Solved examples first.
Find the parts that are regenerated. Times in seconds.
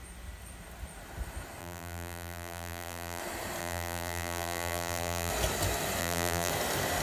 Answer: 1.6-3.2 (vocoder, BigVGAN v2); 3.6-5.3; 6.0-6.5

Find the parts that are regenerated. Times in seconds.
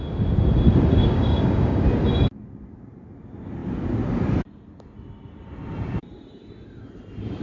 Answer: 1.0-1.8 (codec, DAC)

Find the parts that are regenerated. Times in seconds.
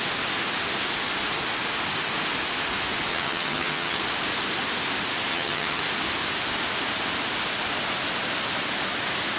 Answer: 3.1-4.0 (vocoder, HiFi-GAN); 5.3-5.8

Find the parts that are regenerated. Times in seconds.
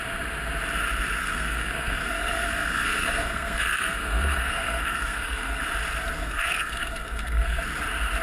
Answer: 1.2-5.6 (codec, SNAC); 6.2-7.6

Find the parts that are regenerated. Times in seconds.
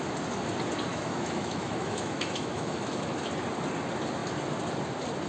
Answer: 0.9-3.3 (autoencoder, DAC-VAE)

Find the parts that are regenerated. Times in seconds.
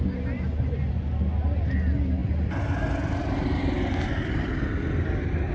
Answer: none